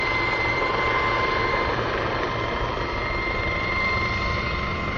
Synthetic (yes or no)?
yes